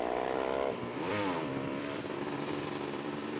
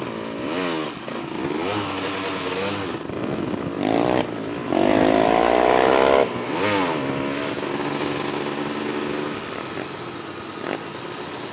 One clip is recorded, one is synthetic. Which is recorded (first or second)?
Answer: second